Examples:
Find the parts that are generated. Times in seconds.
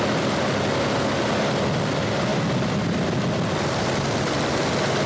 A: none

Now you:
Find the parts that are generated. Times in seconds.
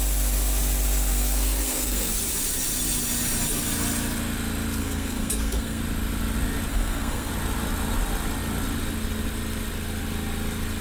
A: 1.1-2.1 (codec, SNAC); 4.8-5.8; 6.7-7.3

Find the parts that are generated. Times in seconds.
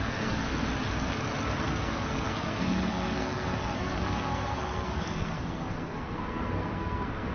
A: 0.0-0.5 (codec, SNAC); 1.6-7.3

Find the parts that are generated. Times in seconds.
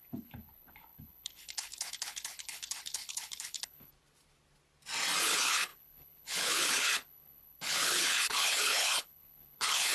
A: 0.0-3.9 (codec, HILCodec); 5.2-9.9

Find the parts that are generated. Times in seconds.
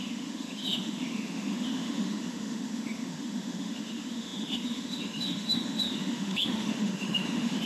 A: 0.0-7.7 (autoencoder, DAC-VAE)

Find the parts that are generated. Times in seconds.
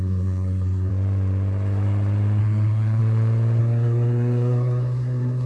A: 0.0-0.9 (codec, SNAC); 2.4-3.0; 3.6-5.5